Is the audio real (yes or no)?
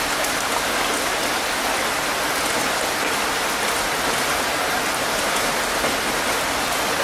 yes